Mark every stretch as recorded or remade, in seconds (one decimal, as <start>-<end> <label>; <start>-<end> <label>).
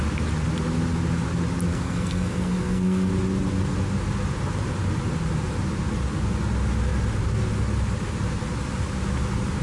0.0-1.7 recorded; 1.7-3.1 remade; 3.1-9.6 recorded